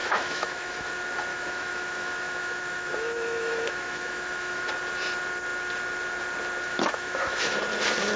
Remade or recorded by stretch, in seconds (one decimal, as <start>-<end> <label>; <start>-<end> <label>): 0.0-0.9 remade; 0.9-1.3 recorded; 1.3-4.7 remade; 4.7-6.7 recorded; 6.7-7.6 remade; 7.6-8.2 recorded